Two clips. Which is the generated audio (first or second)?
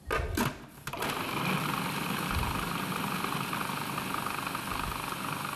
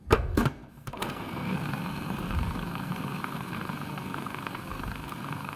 second